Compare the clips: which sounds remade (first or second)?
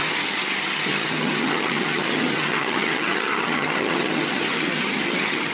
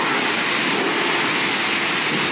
first